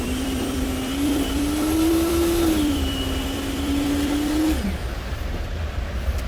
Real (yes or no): no